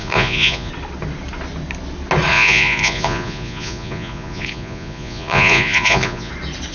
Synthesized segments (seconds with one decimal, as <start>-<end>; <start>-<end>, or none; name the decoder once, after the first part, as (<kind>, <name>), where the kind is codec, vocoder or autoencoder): 0.0-0.7 (vocoder, Vocos); 2.3-6.3